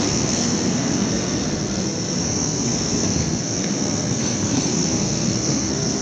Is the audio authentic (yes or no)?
no